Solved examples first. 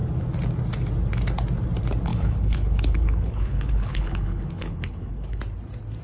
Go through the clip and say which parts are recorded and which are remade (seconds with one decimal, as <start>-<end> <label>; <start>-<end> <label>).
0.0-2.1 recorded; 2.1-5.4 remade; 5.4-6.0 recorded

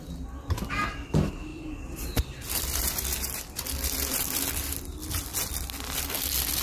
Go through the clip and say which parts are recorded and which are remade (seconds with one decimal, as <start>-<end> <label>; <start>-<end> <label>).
0.0-1.5 recorded; 1.5-4.4 remade; 4.4-6.6 recorded

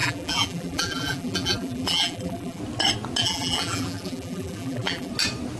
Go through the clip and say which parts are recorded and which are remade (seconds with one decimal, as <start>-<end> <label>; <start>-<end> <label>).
0.0-2.6 remade; 2.6-3.2 recorded; 3.2-5.1 remade; 5.1-5.6 recorded

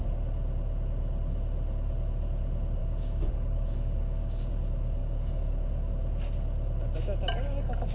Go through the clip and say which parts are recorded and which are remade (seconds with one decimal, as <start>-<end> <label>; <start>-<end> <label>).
0.0-2.8 recorded; 2.8-4.5 remade; 4.5-5.0 recorded; 5.0-5.9 remade; 5.9-7.9 recorded

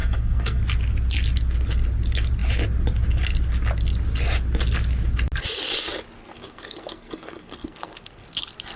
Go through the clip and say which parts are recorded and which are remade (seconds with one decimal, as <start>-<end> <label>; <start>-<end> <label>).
0.0-0.6 remade; 0.6-6.2 recorded; 6.2-8.4 remade; 8.4-8.8 recorded